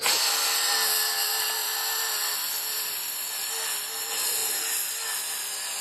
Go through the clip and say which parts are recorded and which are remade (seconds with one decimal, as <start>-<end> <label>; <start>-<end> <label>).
0.0-1.6 recorded; 1.6-3.2 remade; 3.2-5.8 recorded